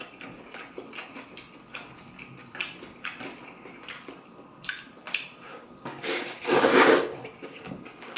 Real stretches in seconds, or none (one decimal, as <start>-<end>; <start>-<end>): 0.0-5.5